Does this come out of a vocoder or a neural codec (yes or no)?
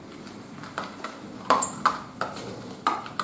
no